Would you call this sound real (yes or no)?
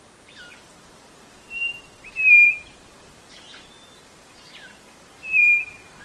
no